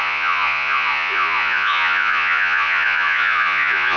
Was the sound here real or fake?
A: fake